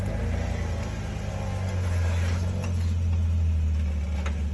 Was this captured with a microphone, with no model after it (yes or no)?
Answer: yes